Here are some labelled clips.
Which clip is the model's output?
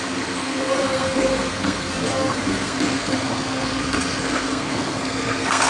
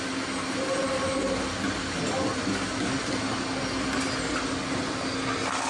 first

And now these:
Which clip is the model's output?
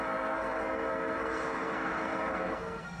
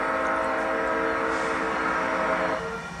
first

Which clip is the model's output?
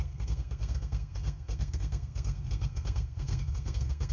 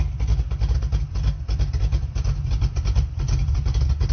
first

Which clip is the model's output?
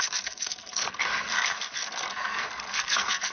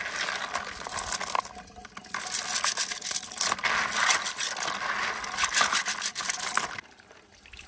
first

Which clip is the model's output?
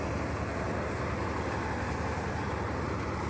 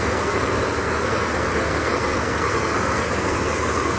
second